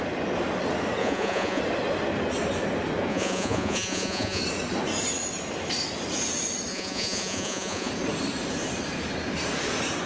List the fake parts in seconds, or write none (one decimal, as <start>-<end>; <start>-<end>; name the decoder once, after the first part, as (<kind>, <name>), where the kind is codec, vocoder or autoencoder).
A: 1.0-1.6 (vocoder, Vocos); 3.1-4.4; 6.7-7.9

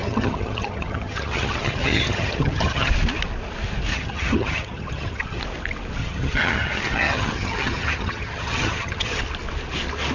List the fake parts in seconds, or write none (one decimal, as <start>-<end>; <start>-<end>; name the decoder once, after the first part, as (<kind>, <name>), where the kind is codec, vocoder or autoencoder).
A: 0.0-2.9 (vocoder, HiFi-GAN); 3.9-5.4; 6.0-9.2

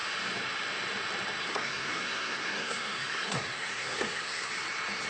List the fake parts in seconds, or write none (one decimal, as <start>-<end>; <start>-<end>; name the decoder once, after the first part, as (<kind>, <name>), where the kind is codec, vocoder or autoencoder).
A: 1.4-4.5 (codec, SNAC)